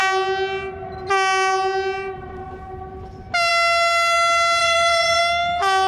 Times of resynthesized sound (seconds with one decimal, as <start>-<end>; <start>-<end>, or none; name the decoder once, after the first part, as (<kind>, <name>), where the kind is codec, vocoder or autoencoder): 4.6-5.2 (vocoder, Vocos)